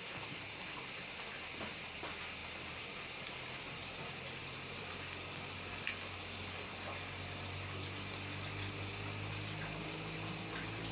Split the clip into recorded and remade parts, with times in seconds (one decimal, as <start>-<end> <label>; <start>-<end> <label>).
0.0-4.4 recorded; 4.4-4.9 remade; 4.9-10.9 recorded